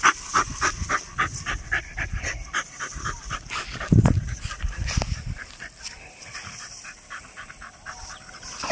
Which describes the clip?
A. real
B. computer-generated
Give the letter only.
A